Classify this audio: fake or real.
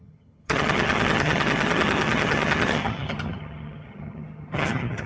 fake